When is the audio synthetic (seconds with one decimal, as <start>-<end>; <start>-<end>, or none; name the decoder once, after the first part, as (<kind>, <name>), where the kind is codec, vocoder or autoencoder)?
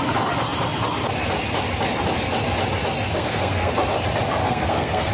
3.1-3.7 (codec, SNAC); 4.4-5.1